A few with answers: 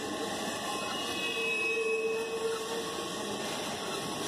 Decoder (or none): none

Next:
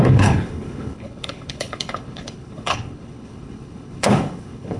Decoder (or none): codec, HILCodec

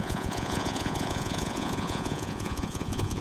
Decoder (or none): vocoder, Vocos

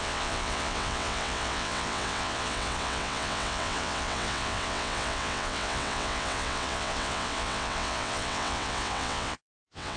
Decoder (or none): vocoder, WaveNeXt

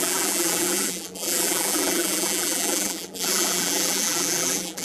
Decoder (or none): vocoder, BigVGAN v2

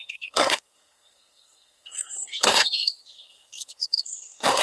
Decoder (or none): codec, SNAC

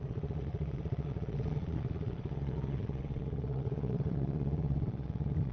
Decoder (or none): vocoder, Vocos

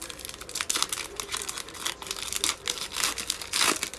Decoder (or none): none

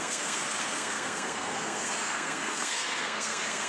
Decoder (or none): codec, SNAC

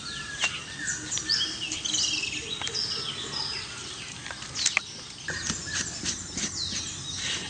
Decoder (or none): none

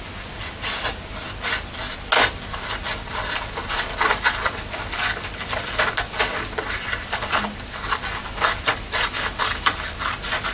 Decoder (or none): none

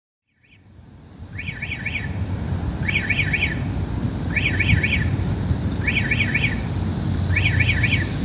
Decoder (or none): none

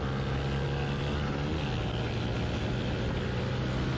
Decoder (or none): none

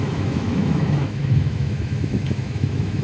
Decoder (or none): autoencoder, DAC-VAE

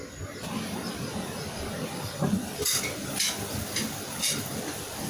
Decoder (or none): none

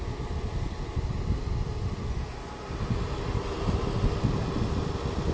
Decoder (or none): none